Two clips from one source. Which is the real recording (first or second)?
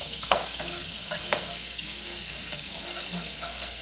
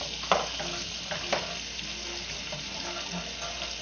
second